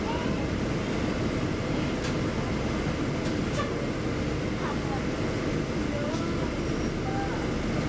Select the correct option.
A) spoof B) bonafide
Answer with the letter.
B